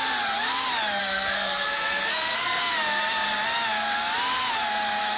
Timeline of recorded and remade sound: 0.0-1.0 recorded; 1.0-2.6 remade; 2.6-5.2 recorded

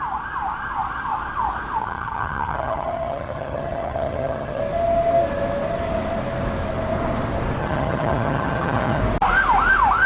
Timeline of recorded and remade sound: 0.0-1.8 recorded; 1.8-4.6 remade; 4.6-7.6 recorded; 7.6-9.0 remade; 9.0-10.1 recorded

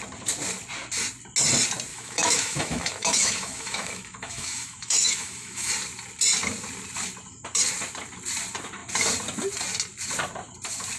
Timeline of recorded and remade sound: 0.0-1.9 recorded; 1.9-5.7 remade; 5.7-11.0 recorded

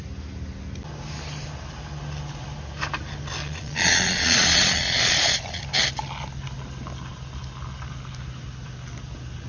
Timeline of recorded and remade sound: 0.0-3.4 recorded; 3.4-5.6 remade; 5.6-9.5 recorded

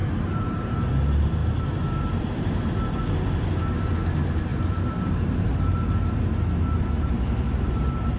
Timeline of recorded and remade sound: 0.0-0.9 remade; 0.9-1.4 recorded; 1.4-3.0 remade; 3.0-4.5 recorded; 4.5-7.7 remade; 7.7-8.2 recorded

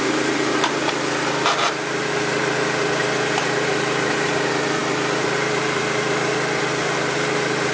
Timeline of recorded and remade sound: 0.0-7.7 remade